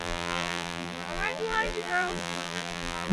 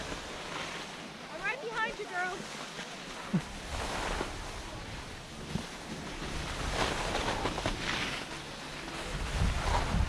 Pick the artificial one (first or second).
first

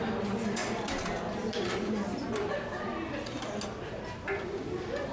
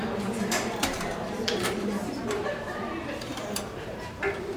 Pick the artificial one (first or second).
second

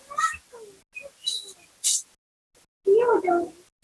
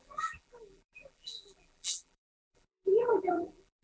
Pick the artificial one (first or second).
second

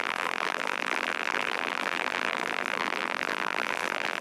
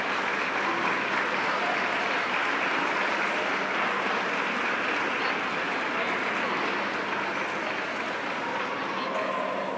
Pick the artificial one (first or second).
first